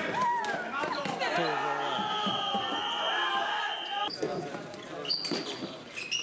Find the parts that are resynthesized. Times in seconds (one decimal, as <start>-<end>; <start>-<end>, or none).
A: none